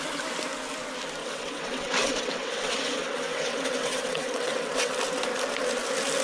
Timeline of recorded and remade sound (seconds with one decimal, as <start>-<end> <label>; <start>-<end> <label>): 0.0-1.2 recorded; 1.2-4.9 remade; 4.9-6.2 recorded